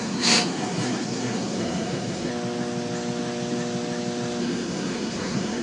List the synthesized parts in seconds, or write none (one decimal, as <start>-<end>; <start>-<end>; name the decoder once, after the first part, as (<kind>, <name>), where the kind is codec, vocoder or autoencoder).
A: 0.0-2.3 (codec, SNAC); 4.4-5.6